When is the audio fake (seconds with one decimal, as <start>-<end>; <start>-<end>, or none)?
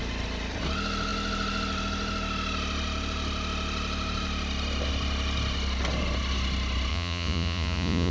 6.9-8.1